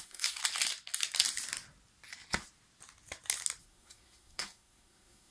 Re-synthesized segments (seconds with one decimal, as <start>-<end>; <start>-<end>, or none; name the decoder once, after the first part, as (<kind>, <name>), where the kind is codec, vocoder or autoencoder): 0.0-0.4 (codec, SNAC); 3.6-5.3